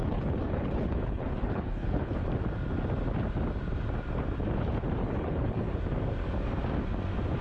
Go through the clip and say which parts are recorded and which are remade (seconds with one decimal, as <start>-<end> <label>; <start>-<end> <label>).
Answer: 0.0-2.3 remade; 2.3-5.0 recorded; 5.0-5.8 remade; 5.8-7.4 recorded